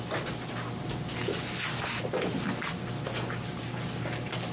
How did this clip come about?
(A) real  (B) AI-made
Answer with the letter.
A